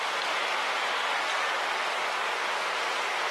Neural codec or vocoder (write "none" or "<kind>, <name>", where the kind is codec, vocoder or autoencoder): none